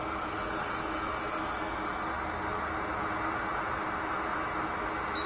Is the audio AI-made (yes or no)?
no